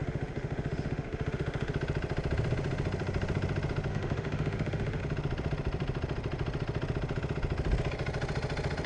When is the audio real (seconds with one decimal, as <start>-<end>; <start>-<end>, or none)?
1.7-3.9; 5.0-8.9